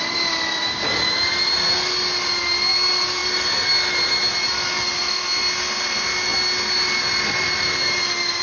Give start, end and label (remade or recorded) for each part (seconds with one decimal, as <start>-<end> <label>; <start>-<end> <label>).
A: 0.0-8.4 recorded